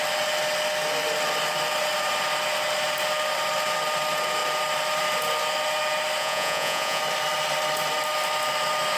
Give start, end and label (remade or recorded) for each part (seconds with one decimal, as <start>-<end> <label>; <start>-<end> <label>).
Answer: 0.0-6.2 recorded; 6.2-7.0 remade; 7.0-9.0 recorded